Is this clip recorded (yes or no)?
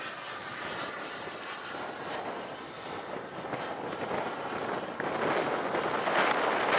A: yes